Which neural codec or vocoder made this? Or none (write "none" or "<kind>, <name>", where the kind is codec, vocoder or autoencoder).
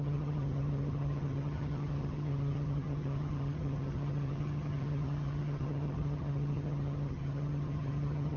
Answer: vocoder, HiFi-GAN